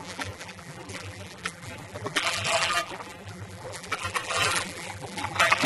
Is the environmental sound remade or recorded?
remade